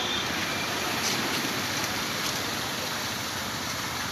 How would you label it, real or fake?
fake